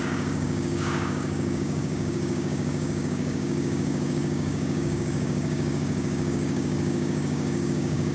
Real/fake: fake